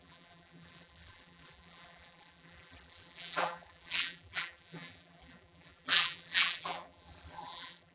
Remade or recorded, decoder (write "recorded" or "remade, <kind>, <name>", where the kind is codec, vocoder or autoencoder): remade, vocoder, BigVGAN v2